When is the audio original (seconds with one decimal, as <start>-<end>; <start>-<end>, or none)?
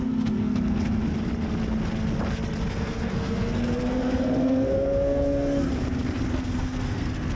1.0-2.7; 5.7-6.3